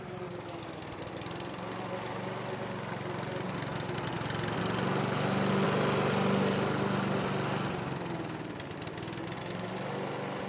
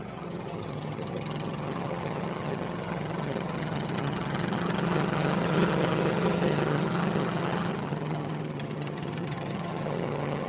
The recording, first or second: first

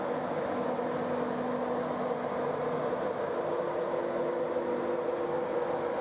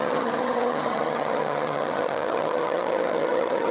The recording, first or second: first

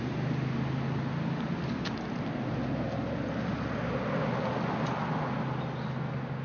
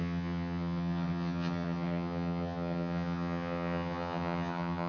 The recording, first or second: first